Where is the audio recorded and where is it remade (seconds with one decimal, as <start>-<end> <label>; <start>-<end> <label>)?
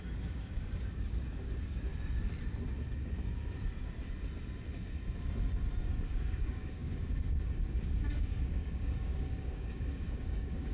0.0-1.9 remade; 1.9-5.9 recorded; 5.9-10.7 remade